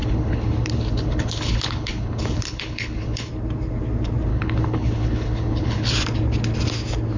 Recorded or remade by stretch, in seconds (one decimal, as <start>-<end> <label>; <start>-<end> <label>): 0.0-3.3 remade; 3.3-4.3 recorded; 4.3-5.9 remade; 5.9-7.2 recorded